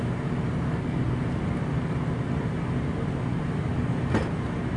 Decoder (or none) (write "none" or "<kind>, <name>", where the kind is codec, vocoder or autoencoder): none